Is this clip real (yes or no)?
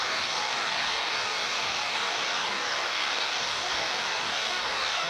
no